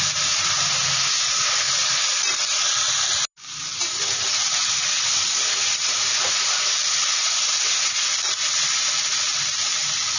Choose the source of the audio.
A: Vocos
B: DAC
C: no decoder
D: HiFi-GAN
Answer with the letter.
C